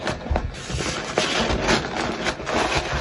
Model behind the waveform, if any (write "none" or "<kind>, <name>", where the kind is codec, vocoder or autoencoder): none